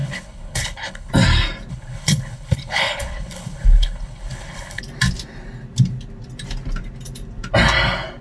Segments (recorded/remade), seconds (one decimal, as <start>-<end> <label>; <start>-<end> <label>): 0.0-1.1 remade; 1.1-1.7 recorded; 1.7-4.8 remade; 4.8-8.2 recorded